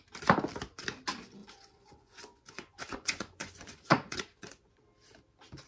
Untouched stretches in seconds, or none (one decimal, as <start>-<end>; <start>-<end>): 0.0-1.4; 4.8-5.7